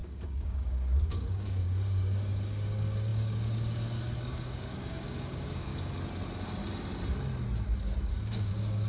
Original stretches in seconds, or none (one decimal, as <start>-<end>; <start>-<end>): 5.7-8.1